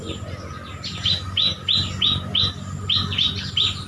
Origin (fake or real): real